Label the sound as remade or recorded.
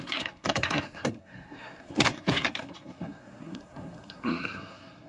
remade